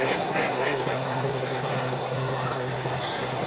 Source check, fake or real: fake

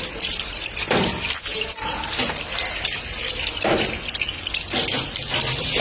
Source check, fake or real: real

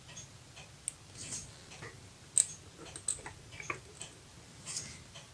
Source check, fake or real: real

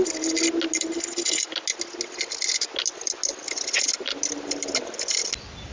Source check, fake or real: real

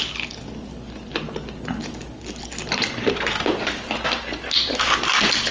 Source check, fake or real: real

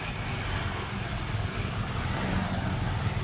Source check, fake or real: real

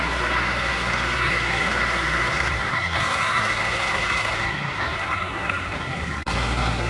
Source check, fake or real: fake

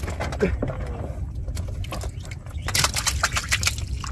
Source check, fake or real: real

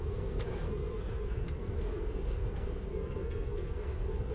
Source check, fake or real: fake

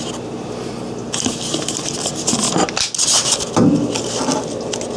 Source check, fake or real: real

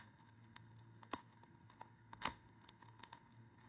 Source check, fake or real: fake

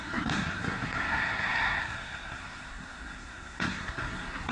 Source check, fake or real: fake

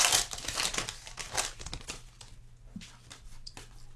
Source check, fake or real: real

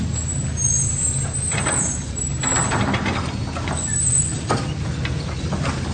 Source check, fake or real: real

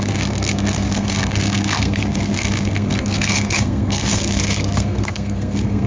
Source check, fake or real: fake